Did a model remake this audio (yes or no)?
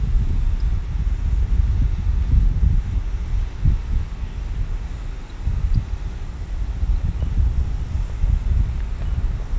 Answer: no